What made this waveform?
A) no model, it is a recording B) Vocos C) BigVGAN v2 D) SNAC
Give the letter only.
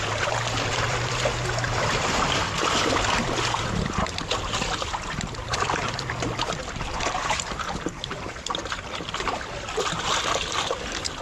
C